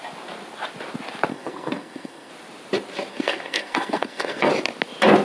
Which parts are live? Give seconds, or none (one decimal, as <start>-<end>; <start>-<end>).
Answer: 0.0-1.3; 2.3-3.1; 4.5-5.2